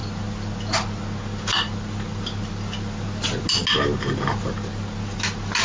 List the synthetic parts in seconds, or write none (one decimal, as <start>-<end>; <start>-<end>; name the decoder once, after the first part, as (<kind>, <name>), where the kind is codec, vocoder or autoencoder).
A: none